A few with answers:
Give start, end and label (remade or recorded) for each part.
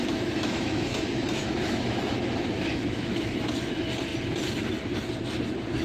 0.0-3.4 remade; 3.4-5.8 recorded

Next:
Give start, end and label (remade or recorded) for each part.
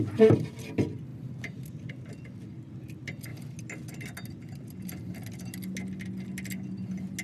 0.0-7.2 recorded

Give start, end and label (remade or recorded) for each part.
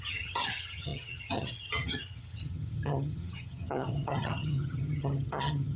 0.0-5.8 remade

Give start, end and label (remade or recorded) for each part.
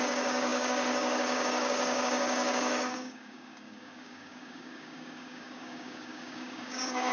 0.0-7.1 remade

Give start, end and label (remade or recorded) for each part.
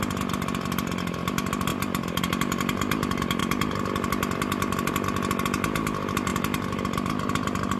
0.0-7.8 recorded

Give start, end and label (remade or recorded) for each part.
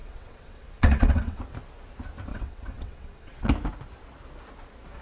0.0-1.4 remade; 1.4-2.3 recorded; 2.3-3.5 remade; 3.5-5.0 recorded